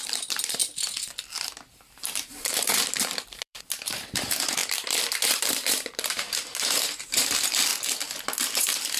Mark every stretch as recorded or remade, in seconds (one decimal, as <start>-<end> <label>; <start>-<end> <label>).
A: 0.0-0.6 remade; 0.6-2.0 recorded; 2.0-7.7 remade; 7.7-8.6 recorded; 8.6-9.0 remade